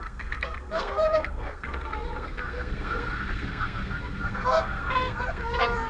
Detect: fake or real fake